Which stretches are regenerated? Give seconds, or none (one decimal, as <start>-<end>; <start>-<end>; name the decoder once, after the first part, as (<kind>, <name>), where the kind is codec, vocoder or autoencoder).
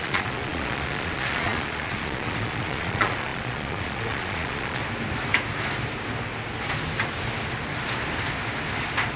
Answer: 0.0-4.8 (vocoder, Vocos)